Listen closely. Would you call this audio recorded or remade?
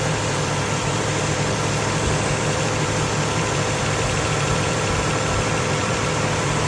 remade